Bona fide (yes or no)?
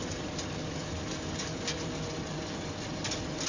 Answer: yes